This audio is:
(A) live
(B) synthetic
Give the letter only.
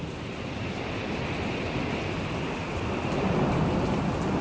A